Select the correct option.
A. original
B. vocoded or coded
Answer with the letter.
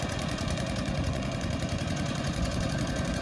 B